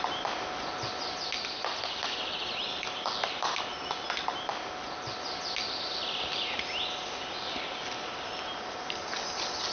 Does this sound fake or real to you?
real